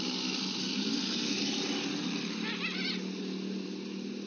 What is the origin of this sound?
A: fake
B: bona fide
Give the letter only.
B